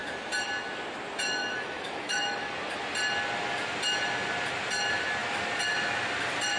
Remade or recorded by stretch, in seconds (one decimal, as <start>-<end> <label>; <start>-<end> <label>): 0.0-1.4 recorded; 1.4-2.4 remade; 2.4-6.6 recorded